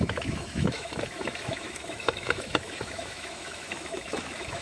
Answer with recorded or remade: remade